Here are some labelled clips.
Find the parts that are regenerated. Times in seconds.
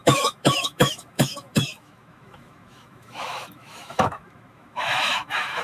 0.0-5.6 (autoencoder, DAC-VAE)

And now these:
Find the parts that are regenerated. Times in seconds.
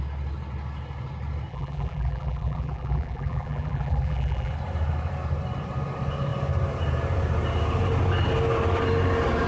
1.5-4.5 (vocoder, BigVGAN v2)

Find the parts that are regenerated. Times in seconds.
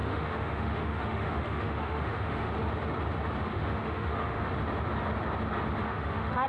0.0-2.5 (autoencoder, DAC-VAE); 3.5-4.5; 5.8-6.5